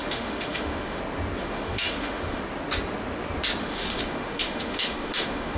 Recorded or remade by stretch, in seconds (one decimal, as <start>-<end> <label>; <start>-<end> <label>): 0.0-1.0 remade; 1.0-1.4 recorded; 1.4-2.4 remade; 2.4-3.6 recorded; 3.6-5.6 remade